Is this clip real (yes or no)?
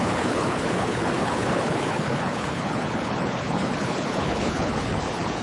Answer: no